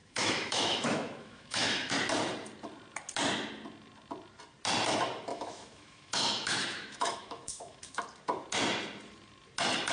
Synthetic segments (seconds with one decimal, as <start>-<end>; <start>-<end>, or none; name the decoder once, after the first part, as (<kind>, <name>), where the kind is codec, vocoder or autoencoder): 0.0-1.9 (autoencoder, DAC-VAE); 5.3-8.0